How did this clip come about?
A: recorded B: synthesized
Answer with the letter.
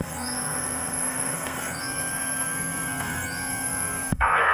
B